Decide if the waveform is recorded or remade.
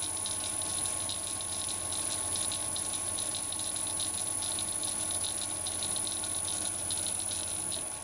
recorded